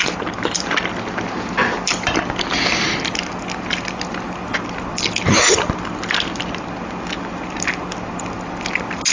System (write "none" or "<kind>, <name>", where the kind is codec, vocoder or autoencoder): none